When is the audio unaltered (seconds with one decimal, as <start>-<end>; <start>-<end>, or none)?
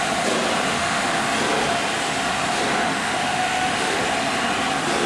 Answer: 0.0-0.7; 1.2-2.9; 4.0-5.1